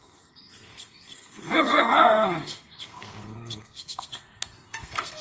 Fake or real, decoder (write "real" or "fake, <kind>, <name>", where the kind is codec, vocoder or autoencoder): fake, codec, SNAC